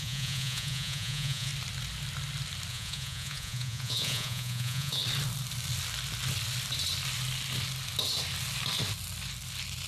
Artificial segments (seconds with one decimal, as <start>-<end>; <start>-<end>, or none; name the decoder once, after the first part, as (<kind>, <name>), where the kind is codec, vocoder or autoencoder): 0.0-1.5 (vocoder, Vocos); 2.7-5.0